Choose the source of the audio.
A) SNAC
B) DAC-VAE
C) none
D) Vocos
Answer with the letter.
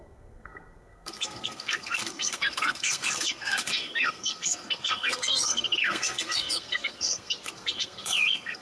A